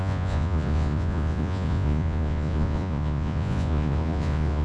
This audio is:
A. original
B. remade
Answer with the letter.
B